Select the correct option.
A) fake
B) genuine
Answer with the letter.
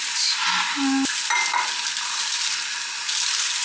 B